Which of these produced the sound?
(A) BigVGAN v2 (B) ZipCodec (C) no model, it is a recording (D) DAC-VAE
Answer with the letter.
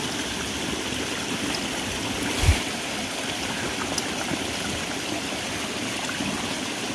C